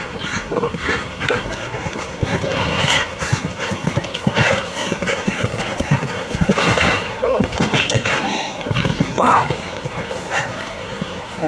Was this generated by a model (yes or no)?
yes